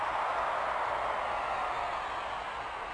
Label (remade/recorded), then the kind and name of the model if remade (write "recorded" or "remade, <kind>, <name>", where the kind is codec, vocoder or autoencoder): recorded